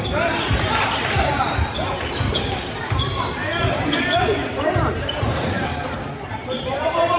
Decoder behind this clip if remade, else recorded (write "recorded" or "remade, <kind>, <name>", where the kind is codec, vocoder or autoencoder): remade, vocoder, BigVGAN v2